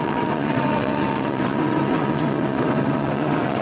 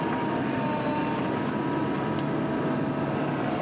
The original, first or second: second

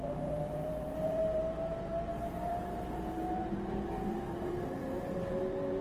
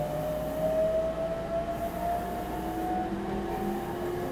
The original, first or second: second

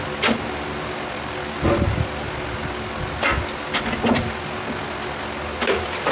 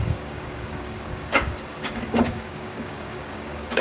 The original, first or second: first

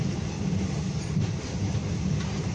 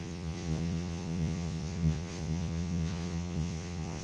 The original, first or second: first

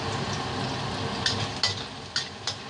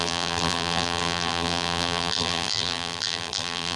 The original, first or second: first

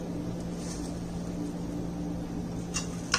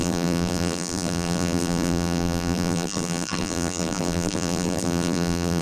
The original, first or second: first